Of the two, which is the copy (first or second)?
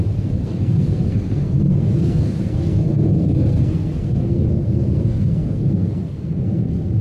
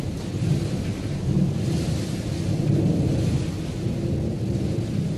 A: first